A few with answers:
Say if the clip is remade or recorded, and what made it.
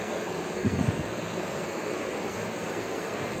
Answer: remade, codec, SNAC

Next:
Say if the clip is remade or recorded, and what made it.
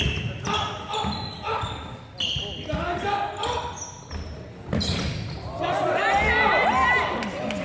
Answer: recorded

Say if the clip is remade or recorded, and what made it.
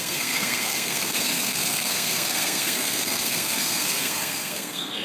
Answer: remade, codec, SNAC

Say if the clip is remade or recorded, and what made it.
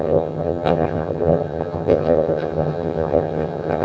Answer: remade, vocoder, HiFi-GAN